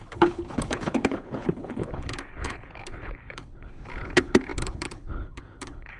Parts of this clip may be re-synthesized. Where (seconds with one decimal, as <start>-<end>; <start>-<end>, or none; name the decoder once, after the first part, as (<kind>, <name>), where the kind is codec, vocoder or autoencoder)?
0.0-6.0 (codec, HILCodec)